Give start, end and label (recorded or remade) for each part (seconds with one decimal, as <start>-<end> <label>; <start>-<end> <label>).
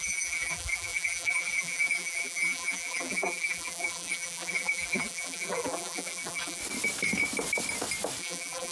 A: 0.0-6.6 remade; 6.6-8.2 recorded; 8.2-8.7 remade